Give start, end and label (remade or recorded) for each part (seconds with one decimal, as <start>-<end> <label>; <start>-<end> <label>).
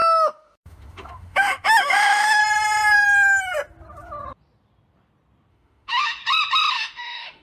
0.0-2.4 remade; 2.4-5.5 recorded; 5.5-6.2 remade; 6.2-6.7 recorded; 6.7-7.4 remade